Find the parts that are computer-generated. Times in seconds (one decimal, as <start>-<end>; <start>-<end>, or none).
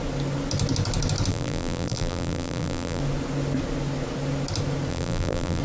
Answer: 1.3-3.0; 4.9-5.6